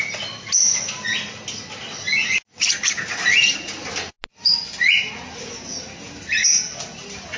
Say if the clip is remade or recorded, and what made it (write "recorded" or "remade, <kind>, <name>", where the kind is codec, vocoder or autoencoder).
recorded